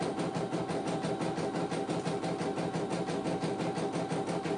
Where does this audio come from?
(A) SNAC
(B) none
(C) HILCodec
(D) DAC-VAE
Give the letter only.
B